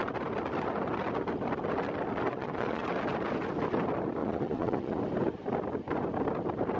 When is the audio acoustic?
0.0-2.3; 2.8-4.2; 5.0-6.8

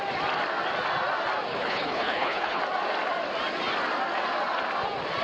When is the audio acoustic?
0.0-1.5; 2.6-5.2

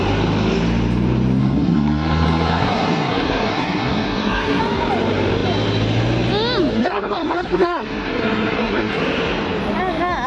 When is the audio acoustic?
0.0-1.4; 4.6-6.7; 9.0-10.3

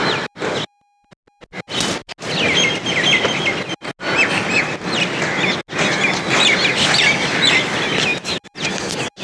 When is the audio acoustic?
0.0-9.2